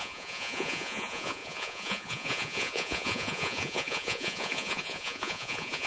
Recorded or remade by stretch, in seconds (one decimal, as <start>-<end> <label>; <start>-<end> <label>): 0.0-5.9 remade